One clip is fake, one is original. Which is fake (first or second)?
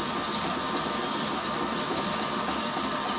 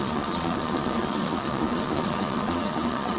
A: second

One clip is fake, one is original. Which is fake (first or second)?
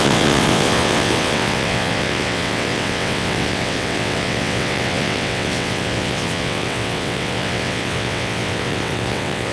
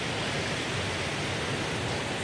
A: first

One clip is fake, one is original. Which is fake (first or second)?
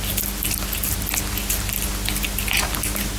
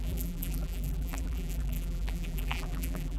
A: second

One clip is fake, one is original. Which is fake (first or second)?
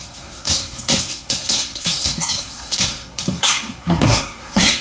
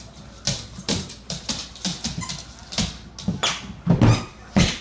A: first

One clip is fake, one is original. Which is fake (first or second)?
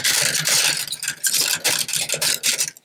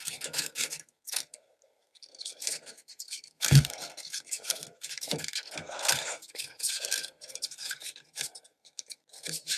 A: second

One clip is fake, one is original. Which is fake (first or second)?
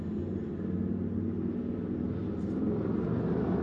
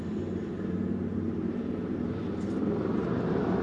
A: second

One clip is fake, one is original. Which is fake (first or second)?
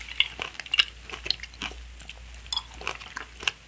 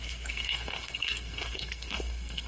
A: second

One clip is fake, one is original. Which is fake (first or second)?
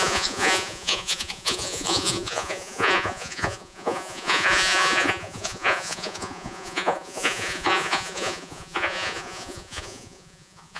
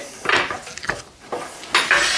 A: first